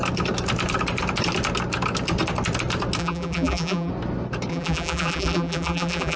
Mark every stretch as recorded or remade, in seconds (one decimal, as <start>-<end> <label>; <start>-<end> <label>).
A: 0.0-3.0 recorded; 3.0-3.9 remade; 3.9-4.5 recorded; 4.5-6.2 remade